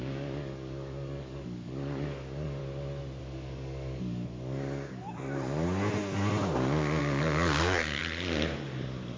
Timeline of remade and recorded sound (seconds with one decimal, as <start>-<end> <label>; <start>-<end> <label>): 0.0-2.6 remade; 2.6-3.2 recorded; 3.2-5.0 remade; 5.0-7.0 recorded; 7.0-8.0 remade; 8.0-9.2 recorded